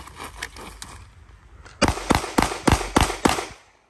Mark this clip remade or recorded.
recorded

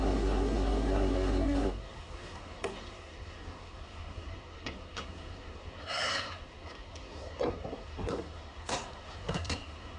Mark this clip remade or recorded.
remade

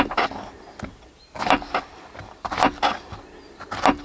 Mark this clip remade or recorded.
recorded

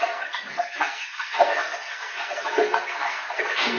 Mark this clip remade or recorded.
remade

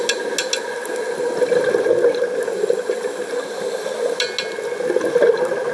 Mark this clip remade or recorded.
recorded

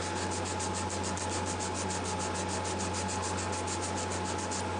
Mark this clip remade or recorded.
recorded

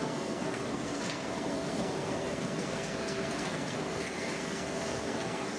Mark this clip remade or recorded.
remade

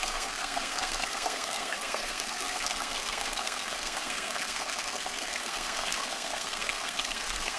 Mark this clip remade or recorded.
remade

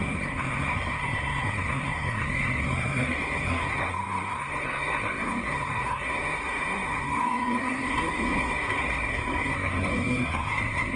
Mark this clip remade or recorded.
remade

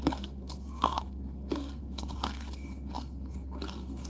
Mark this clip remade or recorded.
remade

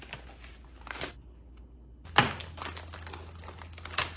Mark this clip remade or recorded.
recorded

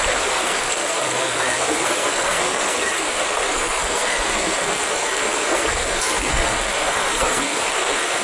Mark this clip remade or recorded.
remade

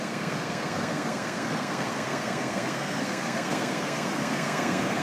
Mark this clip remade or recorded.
remade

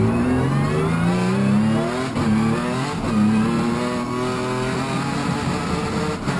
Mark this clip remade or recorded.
recorded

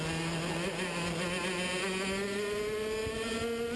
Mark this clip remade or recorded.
recorded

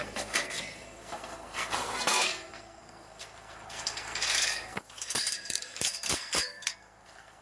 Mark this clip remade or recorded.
remade